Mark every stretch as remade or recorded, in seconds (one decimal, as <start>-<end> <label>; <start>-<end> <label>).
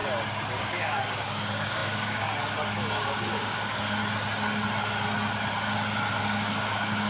0.0-0.6 recorded; 0.6-4.0 remade; 4.0-6.2 recorded; 6.2-7.1 remade